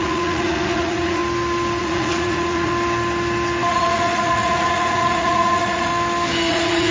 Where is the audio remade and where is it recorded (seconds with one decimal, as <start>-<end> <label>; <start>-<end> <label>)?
0.0-1.2 remade; 1.2-1.8 recorded; 1.8-2.7 remade; 2.7-3.7 recorded; 3.7-5.9 remade; 5.9-6.5 recorded; 6.5-6.9 remade